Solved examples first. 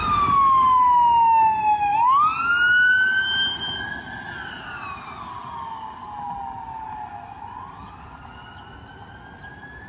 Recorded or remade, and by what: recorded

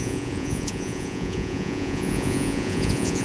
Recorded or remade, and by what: remade, vocoder, Vocos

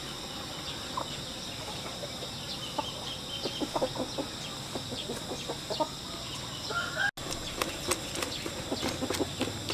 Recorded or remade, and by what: recorded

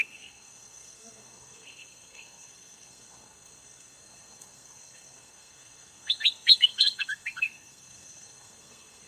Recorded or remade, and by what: remade, codec, SNAC